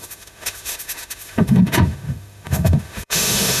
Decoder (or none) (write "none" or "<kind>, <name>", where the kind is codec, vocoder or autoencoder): autoencoder, DAC-VAE